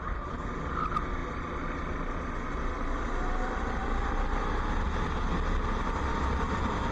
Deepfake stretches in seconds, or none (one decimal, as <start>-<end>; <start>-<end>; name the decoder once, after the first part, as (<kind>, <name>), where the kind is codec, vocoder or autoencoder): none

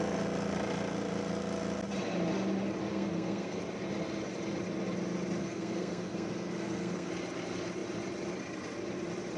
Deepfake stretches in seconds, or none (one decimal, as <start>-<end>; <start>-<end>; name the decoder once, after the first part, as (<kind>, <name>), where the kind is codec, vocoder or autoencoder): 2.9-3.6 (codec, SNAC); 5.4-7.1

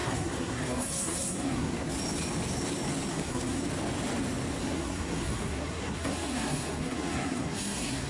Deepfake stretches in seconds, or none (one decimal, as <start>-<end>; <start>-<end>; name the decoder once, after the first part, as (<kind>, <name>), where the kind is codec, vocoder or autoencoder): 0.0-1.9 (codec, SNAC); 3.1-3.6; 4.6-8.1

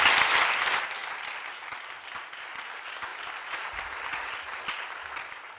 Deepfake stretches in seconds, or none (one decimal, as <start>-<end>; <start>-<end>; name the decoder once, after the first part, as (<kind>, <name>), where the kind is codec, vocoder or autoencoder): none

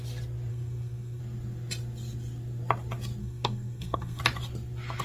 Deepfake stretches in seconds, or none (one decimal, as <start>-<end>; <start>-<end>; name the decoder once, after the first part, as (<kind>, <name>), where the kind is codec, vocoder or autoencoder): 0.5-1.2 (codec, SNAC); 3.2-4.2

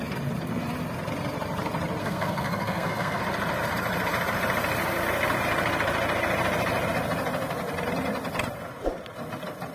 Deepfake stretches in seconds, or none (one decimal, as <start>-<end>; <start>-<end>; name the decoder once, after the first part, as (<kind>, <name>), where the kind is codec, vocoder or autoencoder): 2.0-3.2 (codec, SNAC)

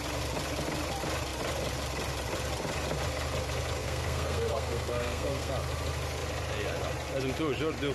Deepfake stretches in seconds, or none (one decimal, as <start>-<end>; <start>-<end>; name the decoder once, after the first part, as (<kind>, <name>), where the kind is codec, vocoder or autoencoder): 3.8-5.5 (codec, SNAC)

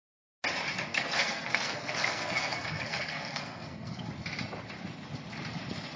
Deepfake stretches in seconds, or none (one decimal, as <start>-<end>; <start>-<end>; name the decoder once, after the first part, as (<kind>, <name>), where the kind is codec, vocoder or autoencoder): 0.9-4.1 (codec, SNAC)